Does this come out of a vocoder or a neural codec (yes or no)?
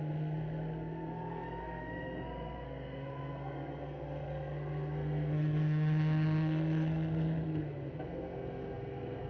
yes